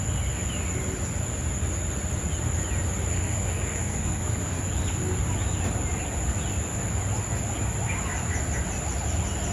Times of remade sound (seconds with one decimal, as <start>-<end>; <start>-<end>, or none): 3.1-4.6